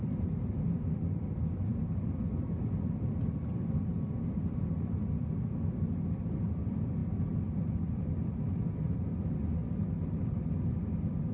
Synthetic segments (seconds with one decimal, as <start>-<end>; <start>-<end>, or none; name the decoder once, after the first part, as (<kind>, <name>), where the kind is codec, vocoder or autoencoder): none

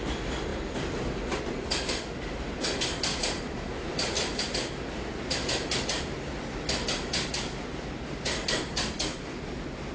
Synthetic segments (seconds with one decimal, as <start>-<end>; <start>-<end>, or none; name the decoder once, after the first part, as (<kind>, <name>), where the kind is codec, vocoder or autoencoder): 3.1-4.4 (vocoder, BigVGAN v2)

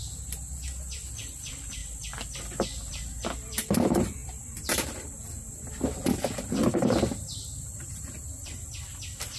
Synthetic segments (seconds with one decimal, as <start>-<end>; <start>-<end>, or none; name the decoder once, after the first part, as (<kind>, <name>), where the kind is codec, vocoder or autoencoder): 1.1-1.8 (vocoder, BigVGAN v2); 2.9-9.4

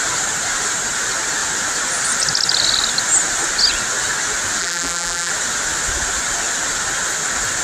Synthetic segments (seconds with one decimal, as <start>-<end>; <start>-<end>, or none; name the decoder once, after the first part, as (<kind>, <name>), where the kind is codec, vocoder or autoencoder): 4.6-5.3 (vocoder, BigVGAN v2)

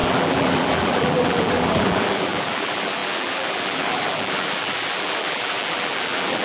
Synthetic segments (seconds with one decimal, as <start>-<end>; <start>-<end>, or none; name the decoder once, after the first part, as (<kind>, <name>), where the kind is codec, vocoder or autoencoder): 0.0-6.4 (vocoder, BigVGAN v2)

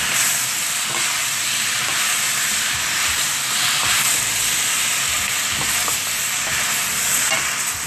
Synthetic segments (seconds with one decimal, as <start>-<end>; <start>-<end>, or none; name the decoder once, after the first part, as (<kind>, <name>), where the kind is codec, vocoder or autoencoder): 1.2-1.8 (vocoder, BigVGAN v2)

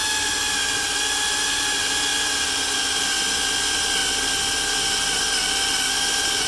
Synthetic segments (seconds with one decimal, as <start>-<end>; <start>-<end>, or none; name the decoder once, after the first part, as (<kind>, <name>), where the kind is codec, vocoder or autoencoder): 2.1-2.6 (vocoder, BigVGAN v2)